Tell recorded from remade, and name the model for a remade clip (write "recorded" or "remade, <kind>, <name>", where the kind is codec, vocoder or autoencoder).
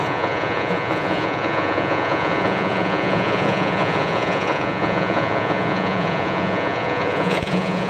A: remade, vocoder, Vocos